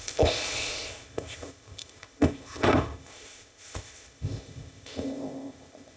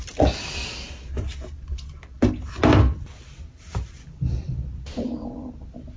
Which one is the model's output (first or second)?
first